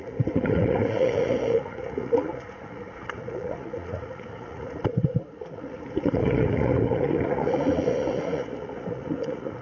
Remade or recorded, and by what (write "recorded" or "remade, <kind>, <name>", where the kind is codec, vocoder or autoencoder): remade, vocoder, Vocos